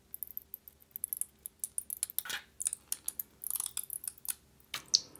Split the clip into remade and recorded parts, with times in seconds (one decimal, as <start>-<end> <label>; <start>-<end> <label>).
0.0-5.2 recorded